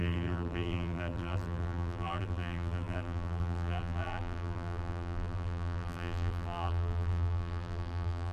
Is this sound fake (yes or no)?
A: yes